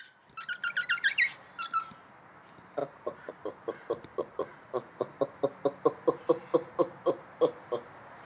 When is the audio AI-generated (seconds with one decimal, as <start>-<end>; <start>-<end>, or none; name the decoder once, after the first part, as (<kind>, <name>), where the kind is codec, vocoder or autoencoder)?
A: 2.8-3.3 (vocoder, Vocos); 4.1-5.2